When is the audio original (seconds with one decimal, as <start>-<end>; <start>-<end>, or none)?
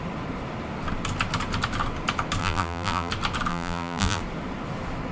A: 0.0-2.4; 3.1-3.5; 4.2-5.1